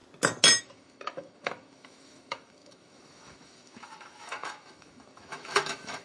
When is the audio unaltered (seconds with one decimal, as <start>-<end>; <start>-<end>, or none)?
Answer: 0.0-0.6